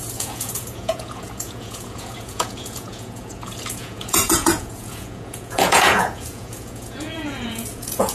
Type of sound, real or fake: fake